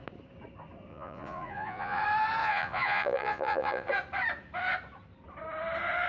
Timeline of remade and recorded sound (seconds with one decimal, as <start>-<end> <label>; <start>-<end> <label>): 0.0-0.9 recorded; 0.9-2.0 remade; 2.0-2.4 recorded; 2.4-3.9 remade; 3.9-6.1 recorded